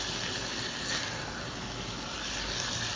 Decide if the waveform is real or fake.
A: real